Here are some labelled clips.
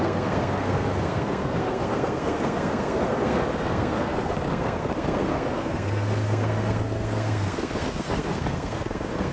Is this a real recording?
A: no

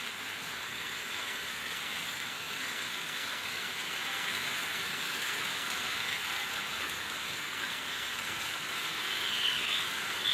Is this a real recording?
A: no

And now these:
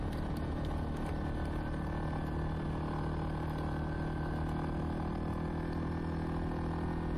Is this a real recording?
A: yes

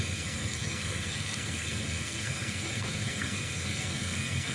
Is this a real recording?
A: no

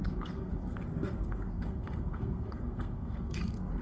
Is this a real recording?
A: no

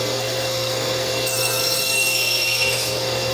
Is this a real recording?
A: no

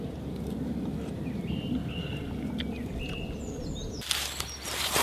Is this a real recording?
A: yes